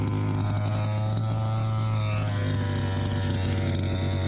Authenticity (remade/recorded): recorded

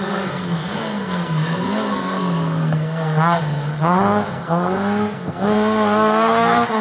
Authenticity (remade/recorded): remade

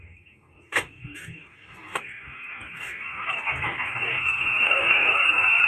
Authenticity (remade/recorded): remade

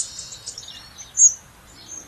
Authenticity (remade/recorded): recorded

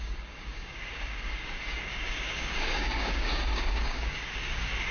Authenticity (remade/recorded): remade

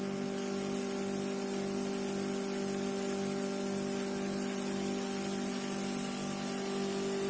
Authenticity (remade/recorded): recorded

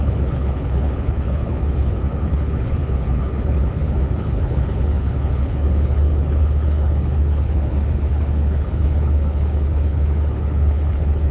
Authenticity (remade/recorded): remade